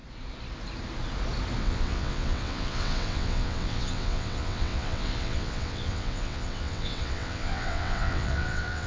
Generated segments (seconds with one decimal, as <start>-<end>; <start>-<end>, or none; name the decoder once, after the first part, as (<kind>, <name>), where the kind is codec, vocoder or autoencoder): 1.6-8.9 (vocoder, WaveNeXt)